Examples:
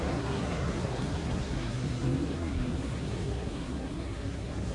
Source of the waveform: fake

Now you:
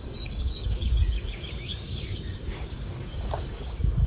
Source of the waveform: fake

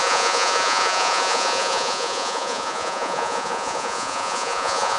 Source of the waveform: fake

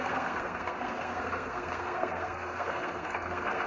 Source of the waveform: fake